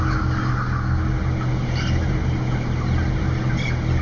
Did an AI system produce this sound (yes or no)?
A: no